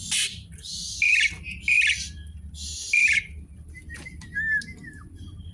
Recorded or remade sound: remade